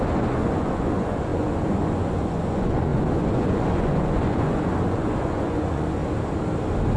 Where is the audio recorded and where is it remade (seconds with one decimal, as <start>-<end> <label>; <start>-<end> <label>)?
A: 0.0-6.0 remade; 6.0-7.0 recorded